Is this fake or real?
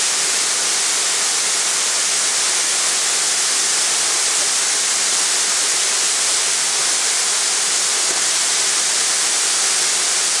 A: real